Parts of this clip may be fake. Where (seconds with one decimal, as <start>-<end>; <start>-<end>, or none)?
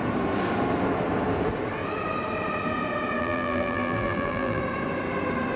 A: 3.2-4.6